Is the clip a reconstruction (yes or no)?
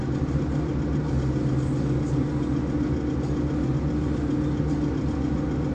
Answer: no